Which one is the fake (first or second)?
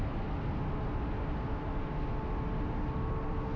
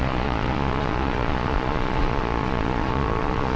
second